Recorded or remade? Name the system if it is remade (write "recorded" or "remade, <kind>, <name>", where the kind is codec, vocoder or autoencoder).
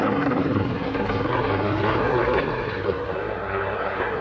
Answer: remade, codec, SNAC